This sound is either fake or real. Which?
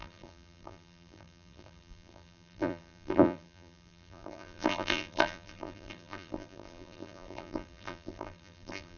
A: fake